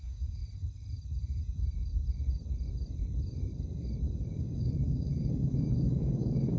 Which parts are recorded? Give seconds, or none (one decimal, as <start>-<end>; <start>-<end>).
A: 0.4-4.3